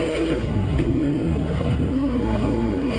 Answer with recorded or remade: remade